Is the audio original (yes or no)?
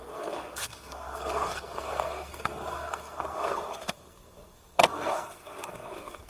no